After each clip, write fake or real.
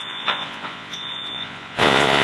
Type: fake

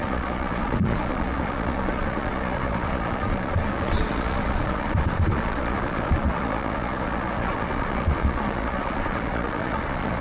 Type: fake